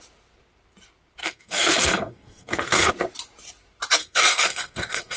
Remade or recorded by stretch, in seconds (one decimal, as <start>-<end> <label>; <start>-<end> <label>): 0.0-1.2 recorded; 1.2-2.9 remade; 2.9-4.0 recorded; 4.0-5.2 remade